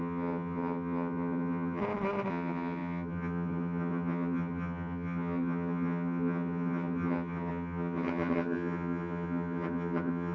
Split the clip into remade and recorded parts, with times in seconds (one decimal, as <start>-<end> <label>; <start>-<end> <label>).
0.0-1.8 remade; 1.8-2.3 recorded; 2.3-10.3 remade